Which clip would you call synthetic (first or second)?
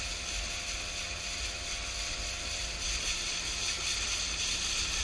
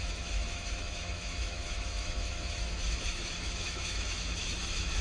second